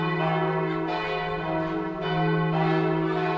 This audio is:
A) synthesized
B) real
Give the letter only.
B